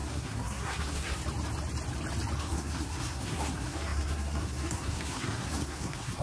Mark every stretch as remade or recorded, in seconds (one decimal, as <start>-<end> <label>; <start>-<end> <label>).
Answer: 0.0-1.2 remade; 1.2-2.4 recorded; 2.4-6.2 remade

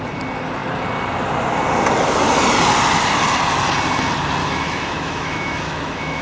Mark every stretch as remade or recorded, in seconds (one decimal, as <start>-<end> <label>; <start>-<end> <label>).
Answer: 0.0-4.4 recorded; 4.4-6.2 remade

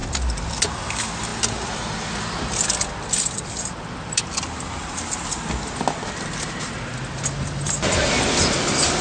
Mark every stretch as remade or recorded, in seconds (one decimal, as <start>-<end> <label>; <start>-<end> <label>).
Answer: 0.0-9.0 recorded

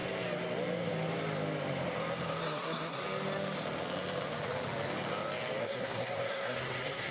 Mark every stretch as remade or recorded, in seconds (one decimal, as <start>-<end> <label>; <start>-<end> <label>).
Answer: 0.0-2.4 recorded; 2.4-3.0 remade; 3.0-5.6 recorded; 5.6-7.1 remade

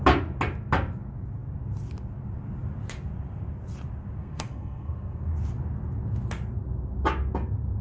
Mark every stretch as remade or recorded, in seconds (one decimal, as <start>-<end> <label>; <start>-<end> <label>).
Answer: 0.0-4.2 recorded; 4.2-5.3 remade; 5.3-7.8 recorded